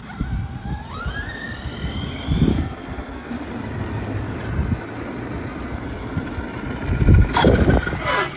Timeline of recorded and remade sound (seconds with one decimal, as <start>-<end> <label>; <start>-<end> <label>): 0.0-2.5 recorded; 2.5-3.3 remade; 3.3-8.4 recorded